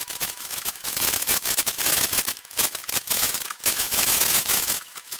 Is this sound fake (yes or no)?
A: yes